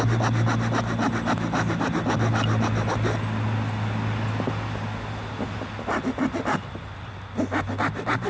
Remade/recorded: recorded